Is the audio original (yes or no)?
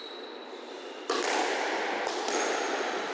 no